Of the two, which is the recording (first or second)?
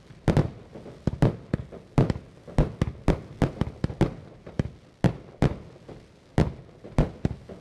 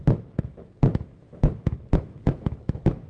first